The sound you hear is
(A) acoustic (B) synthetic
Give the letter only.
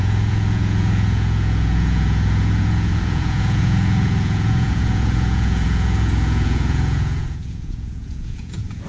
B